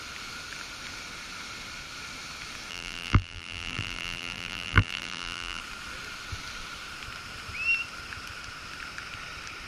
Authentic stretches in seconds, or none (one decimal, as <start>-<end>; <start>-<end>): 0.0-2.7; 5.6-9.7